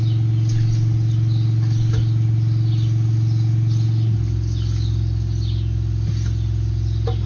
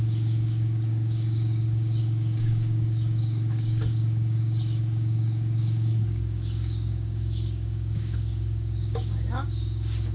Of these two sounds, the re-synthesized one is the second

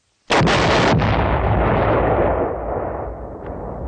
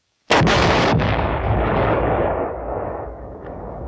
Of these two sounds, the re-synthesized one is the second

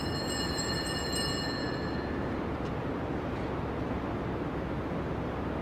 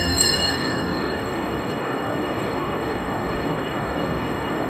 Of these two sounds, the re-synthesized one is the second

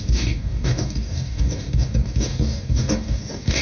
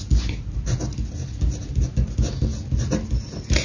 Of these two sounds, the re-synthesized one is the first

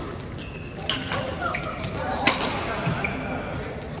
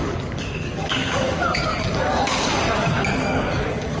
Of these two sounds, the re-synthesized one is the second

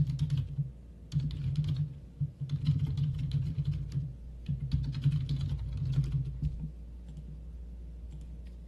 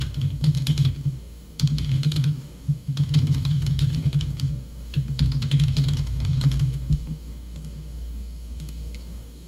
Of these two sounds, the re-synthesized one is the second